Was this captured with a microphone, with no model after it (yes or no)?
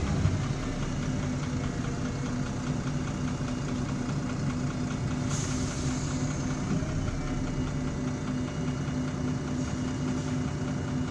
yes